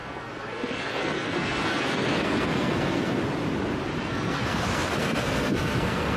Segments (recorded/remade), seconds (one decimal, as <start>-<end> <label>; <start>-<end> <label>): 0.0-3.2 remade; 3.2-4.0 recorded; 4.0-6.2 remade